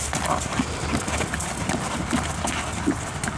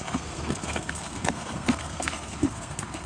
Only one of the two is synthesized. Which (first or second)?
second